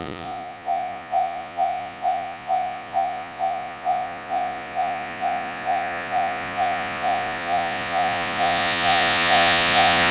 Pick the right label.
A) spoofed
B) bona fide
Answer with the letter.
A